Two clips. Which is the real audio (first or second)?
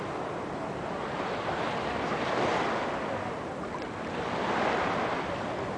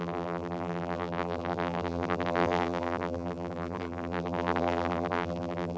first